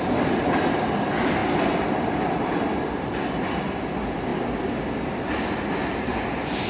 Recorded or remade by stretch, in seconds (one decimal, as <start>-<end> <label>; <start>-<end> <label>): 0.0-6.7 recorded